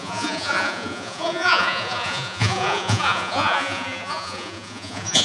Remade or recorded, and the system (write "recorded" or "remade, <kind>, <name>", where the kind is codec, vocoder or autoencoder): remade, vocoder, Vocos